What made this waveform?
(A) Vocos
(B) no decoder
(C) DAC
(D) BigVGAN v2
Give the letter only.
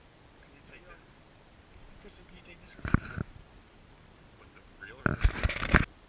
D